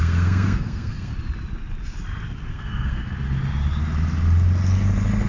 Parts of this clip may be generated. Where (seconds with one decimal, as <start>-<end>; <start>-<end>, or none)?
0.0-1.1; 2.5-3.0